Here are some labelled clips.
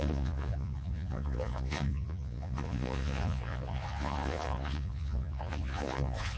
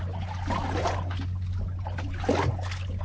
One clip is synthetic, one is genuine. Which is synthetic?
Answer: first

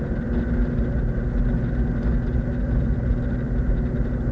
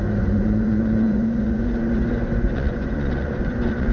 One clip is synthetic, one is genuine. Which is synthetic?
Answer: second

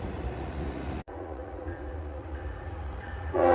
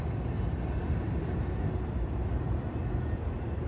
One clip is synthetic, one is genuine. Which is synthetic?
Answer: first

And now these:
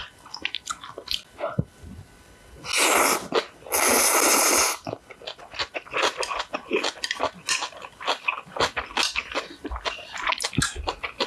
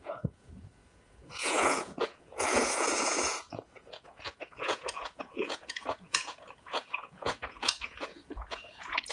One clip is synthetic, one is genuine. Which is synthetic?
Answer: second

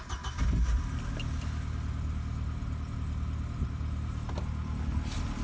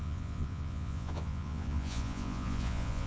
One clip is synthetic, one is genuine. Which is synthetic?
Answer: second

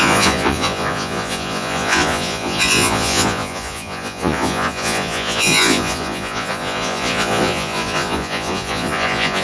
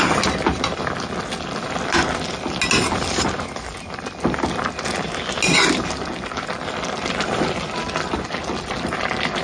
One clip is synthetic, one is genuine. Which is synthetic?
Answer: first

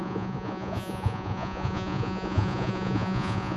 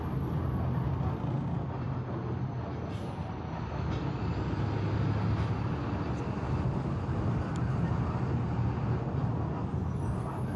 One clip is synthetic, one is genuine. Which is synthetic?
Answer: first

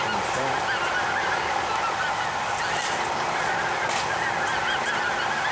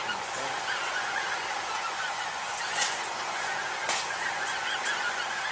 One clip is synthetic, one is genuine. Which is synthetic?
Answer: second